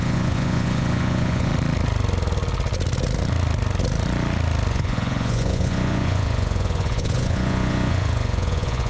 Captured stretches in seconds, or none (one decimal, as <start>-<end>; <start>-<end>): 1.5-4.7